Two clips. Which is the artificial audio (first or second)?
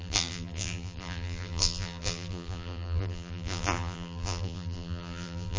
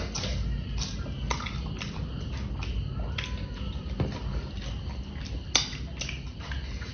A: first